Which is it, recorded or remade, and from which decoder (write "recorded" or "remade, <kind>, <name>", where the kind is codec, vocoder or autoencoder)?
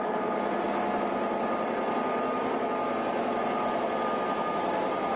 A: recorded